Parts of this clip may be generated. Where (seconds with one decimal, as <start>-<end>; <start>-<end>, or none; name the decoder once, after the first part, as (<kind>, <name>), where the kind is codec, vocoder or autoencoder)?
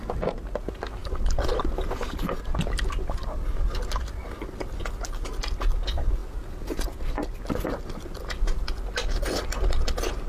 none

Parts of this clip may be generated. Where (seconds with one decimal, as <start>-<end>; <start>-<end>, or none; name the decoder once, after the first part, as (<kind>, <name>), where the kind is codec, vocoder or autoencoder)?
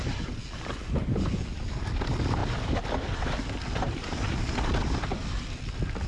none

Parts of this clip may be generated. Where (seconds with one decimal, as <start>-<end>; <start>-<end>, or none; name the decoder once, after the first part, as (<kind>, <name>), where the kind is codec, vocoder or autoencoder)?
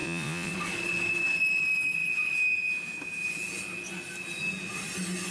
0.0-0.5 (vocoder, Vocos)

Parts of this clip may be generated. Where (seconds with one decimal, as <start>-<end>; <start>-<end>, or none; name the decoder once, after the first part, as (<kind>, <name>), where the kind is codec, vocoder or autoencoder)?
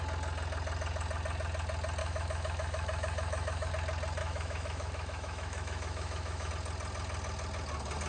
2.0-3.7 (autoencoder, DAC-VAE); 4.2-6.5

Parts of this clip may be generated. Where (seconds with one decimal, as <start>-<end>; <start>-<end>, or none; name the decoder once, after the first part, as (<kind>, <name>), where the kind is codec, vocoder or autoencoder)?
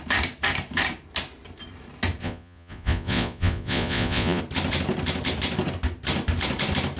2.2-4.4 (vocoder, Vocos)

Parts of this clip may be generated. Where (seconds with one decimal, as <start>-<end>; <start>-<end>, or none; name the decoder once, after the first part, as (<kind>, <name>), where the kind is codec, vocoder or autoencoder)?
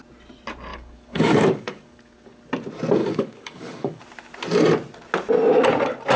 0.7-2.4 (codec, DAC); 3.0-4.0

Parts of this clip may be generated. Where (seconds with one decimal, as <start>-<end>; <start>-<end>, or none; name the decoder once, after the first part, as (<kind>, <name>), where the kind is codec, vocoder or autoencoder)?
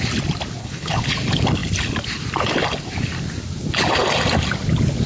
0.6-1.1 (codec, HILCodec)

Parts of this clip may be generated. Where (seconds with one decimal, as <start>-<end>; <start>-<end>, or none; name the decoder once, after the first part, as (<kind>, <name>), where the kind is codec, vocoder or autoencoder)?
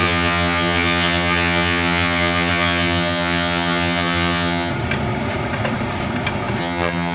0.0-4.7 (vocoder, HiFi-GAN); 6.6-7.1